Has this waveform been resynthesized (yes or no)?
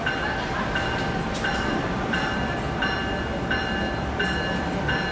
yes